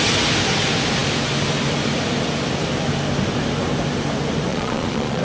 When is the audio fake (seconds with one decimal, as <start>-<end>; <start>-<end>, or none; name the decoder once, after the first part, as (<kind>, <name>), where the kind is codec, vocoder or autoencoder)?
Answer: 4.5-5.2 (vocoder, Vocos)